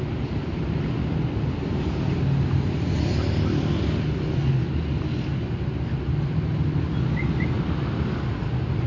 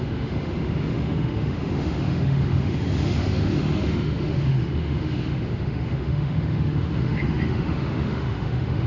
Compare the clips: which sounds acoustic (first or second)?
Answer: first